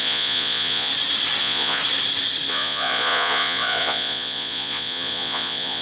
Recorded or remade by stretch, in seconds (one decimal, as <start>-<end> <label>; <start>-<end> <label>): 0.0-0.9 remade; 0.9-1.4 recorded; 1.4-1.8 remade; 1.8-2.5 recorded; 2.5-5.8 remade